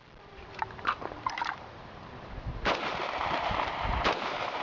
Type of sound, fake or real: fake